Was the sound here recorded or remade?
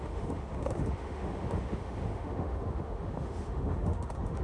remade